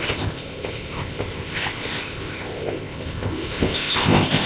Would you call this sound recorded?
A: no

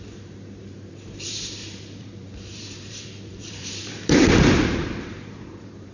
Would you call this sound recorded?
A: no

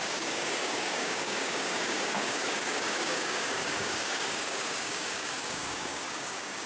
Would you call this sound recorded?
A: no